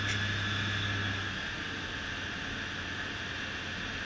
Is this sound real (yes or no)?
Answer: yes